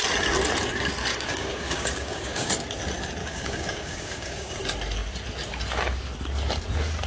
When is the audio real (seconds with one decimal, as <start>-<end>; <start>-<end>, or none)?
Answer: 0.0-1.1; 2.5-3.2; 4.6-7.1